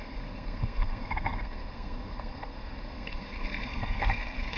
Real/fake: fake